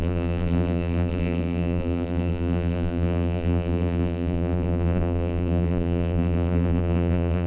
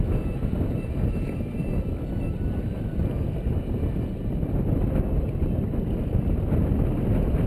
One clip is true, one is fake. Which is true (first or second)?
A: second